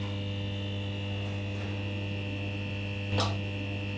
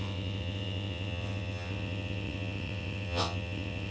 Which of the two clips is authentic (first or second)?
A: first